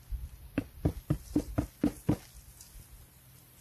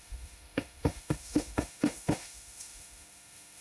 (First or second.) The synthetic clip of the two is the second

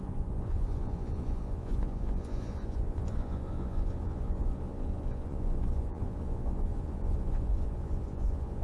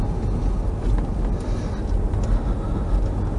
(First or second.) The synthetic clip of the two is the first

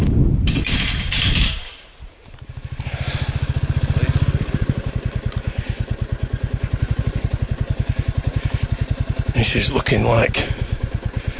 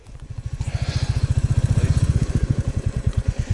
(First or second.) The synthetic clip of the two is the second